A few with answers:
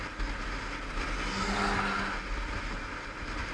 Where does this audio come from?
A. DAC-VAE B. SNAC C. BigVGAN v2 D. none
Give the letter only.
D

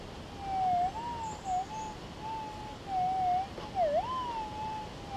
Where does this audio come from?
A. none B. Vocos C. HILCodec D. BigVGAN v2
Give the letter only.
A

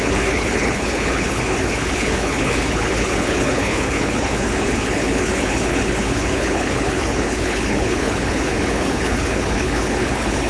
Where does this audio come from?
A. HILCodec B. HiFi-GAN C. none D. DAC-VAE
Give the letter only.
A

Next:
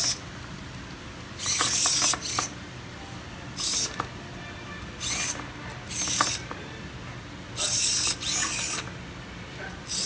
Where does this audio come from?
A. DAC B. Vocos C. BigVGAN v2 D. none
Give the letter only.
D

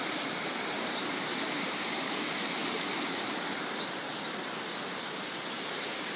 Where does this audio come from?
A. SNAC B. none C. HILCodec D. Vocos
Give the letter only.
B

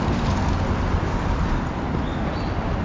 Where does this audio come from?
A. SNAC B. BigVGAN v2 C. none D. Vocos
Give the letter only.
C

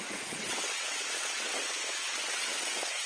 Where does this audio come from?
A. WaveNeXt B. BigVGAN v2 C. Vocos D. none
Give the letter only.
A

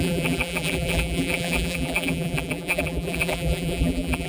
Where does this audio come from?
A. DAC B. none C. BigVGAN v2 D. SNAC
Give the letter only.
C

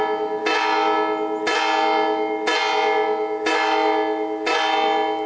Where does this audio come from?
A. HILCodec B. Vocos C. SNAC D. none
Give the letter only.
D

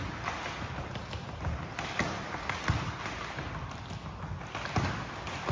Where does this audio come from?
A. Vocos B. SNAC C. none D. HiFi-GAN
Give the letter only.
C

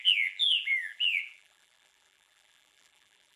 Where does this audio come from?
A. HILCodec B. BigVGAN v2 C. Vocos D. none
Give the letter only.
B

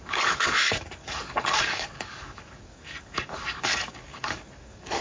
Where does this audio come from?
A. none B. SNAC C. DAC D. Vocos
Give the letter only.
C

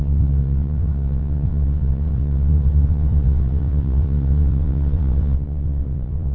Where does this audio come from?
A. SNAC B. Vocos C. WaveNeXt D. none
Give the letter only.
C